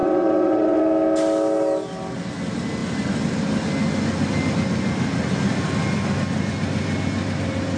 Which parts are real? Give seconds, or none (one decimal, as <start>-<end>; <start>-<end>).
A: 0.8-7.8